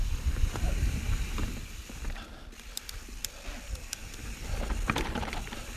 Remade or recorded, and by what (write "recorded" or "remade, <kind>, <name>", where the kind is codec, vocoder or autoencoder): remade, vocoder, BigVGAN v2